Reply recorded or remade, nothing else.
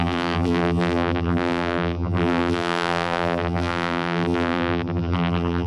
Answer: remade